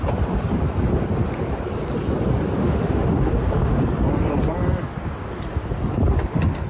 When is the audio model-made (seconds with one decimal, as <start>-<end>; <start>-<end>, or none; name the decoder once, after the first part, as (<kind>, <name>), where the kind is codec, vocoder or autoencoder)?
2.6-3.8 (autoencoder, DAC-VAE)